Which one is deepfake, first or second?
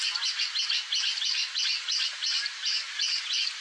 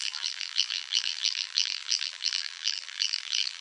second